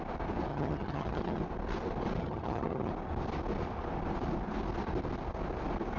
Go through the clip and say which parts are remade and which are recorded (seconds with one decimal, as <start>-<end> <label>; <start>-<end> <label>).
0.0-0.5 recorded; 0.5-1.4 remade; 1.4-2.2 recorded; 2.2-2.9 remade; 2.9-6.0 recorded